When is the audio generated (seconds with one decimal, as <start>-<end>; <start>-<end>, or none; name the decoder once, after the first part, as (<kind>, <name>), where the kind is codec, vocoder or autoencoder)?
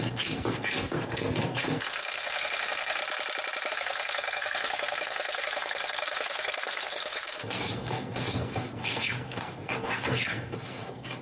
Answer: 0.0-3.0 (codec, SNAC); 3.7-11.2